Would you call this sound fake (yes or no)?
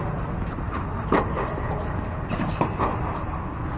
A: no